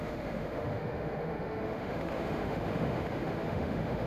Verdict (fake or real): fake